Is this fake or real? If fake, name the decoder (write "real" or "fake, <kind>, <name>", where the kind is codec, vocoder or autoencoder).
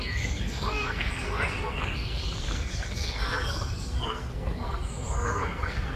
fake, codec, SNAC